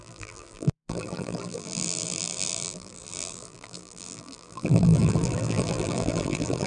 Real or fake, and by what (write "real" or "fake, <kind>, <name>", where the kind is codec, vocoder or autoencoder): fake, vocoder, BigVGAN v2